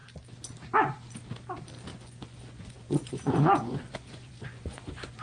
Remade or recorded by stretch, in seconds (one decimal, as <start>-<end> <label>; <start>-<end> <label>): 0.0-1.9 recorded; 1.9-5.2 remade